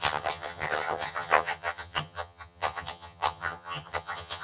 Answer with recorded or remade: remade